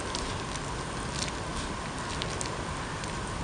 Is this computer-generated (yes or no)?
no